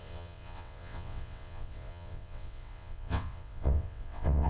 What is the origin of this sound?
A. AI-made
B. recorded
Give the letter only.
A